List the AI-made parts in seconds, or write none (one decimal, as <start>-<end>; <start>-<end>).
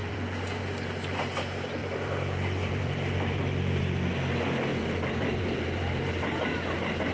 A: 0.0-0.6; 1.8-3.8; 4.7-6.1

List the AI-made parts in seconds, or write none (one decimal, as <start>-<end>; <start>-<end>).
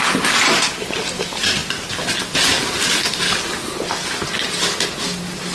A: none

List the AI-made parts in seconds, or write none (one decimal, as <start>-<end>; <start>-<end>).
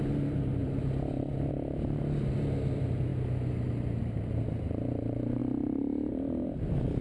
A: 0.0-5.4; 6.1-7.0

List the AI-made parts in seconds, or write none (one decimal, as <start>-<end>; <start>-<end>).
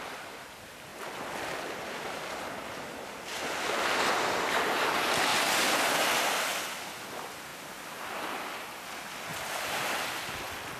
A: none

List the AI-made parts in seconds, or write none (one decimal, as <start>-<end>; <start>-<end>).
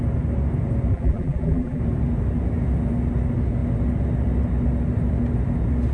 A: 0.9-1.8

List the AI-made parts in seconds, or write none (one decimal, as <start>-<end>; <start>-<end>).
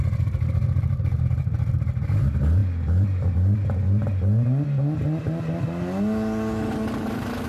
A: 0.0-2.6; 7.1-7.5